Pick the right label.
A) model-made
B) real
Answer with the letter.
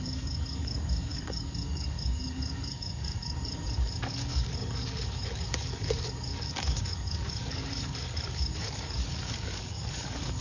A